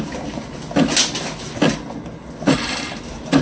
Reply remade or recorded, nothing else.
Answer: recorded